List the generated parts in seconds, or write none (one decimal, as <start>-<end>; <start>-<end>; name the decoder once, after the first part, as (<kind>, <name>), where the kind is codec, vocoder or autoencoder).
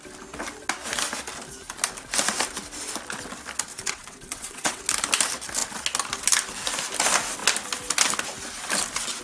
3.7-4.8 (vocoder, WaveNeXt)